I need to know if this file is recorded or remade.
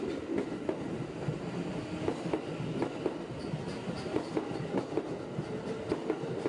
recorded